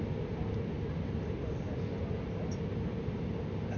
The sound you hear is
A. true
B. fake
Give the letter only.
A